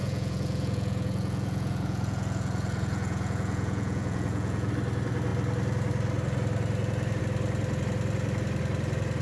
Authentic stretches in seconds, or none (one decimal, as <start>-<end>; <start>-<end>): 4.7-9.2